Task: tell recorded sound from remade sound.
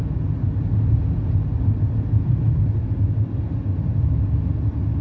recorded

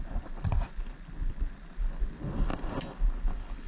recorded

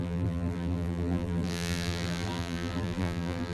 remade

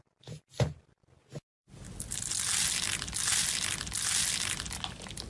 recorded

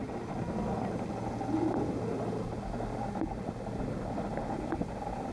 recorded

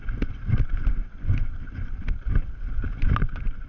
recorded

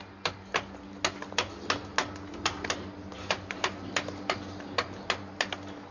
recorded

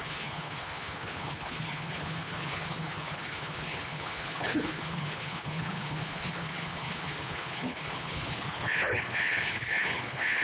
remade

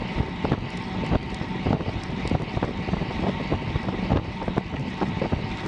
recorded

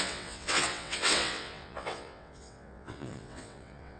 remade